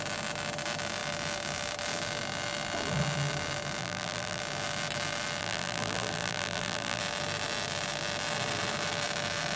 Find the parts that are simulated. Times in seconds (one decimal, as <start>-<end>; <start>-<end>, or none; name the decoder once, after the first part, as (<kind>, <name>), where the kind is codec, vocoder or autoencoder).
3.8-4.4 (vocoder, BigVGAN v2); 5.4-7.0